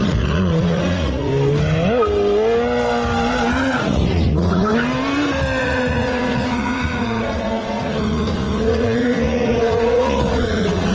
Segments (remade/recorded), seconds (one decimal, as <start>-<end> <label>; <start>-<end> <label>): 0.0-1.3 remade; 1.3-3.6 recorded; 3.6-4.7 remade; 4.7-5.6 recorded; 5.6-10.9 remade